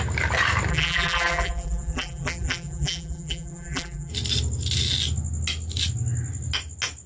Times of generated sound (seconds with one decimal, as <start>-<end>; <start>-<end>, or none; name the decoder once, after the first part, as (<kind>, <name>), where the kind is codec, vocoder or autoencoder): 0.7-4.1 (vocoder, BigVGAN v2)